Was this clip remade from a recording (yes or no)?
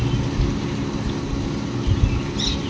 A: no